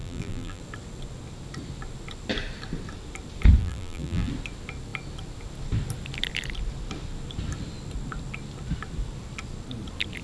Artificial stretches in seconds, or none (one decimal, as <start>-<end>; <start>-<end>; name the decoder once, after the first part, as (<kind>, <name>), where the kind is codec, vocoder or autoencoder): 0.0-0.6 (vocoder, BigVGAN v2); 3.6-4.3